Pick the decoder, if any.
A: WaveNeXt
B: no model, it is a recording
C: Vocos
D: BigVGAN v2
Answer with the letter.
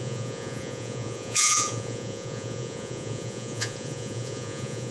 C